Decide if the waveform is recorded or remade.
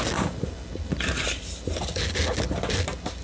recorded